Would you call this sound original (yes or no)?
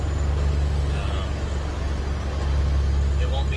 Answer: yes